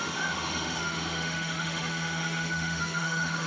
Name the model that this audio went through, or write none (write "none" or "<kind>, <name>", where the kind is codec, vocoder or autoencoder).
autoencoder, DAC-VAE